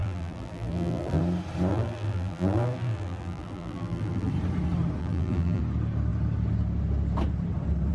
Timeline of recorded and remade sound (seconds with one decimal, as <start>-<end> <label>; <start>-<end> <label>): 0.0-1.2 remade; 1.2-1.7 recorded; 1.7-4.3 remade; 4.3-5.0 recorded; 5.0-5.6 remade; 5.6-7.9 recorded